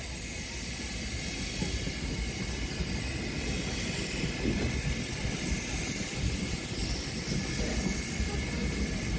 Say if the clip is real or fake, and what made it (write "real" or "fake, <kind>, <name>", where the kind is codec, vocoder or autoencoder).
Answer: real